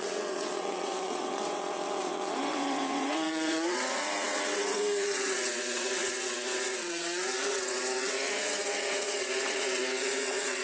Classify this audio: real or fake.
fake